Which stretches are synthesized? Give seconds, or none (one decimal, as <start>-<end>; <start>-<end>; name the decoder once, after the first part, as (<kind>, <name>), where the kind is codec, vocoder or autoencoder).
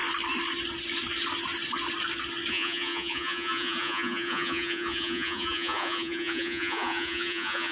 2.5-7.7 (vocoder, Vocos)